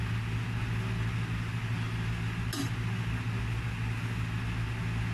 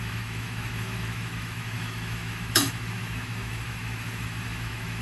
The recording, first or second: first